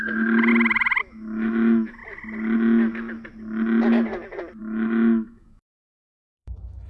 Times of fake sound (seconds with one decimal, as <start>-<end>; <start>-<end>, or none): 0.0-0.5; 1.0-2.0; 4.6-6.9